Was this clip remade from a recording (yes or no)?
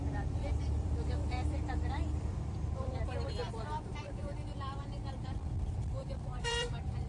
yes